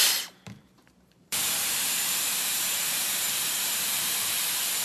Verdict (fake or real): fake